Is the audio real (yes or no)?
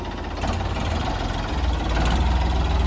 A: yes